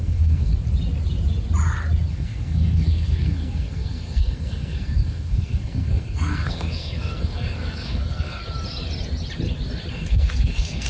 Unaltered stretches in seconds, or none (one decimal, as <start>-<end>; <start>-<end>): 0.5-2.1; 8.4-9.9